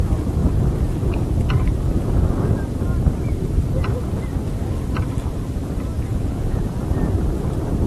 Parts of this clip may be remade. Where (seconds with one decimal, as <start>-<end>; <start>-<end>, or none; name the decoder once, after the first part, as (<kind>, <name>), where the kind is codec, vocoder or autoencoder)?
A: 6.1-6.6 (vocoder, Vocos)